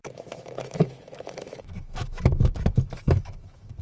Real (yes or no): no